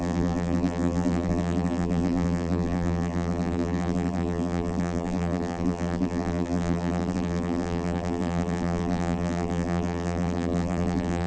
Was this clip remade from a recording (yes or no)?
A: yes